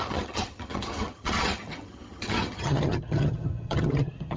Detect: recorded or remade remade